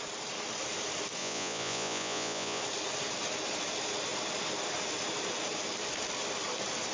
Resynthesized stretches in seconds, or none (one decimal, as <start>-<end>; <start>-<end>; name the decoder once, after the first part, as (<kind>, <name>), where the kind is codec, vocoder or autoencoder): 1.2-2.6 (vocoder, Vocos)